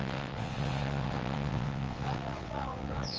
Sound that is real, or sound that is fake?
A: fake